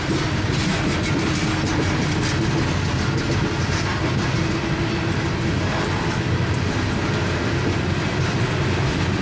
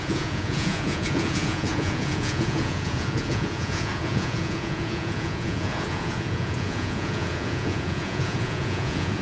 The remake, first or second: second